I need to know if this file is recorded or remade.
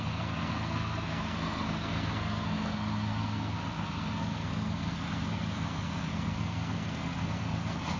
remade